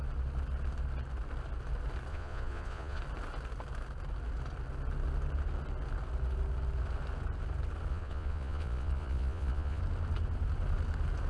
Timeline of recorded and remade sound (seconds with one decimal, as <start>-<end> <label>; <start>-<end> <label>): 0.0-2.1 recorded; 2.1-3.0 remade; 3.0-7.9 recorded; 7.9-9.8 remade; 9.8-11.3 recorded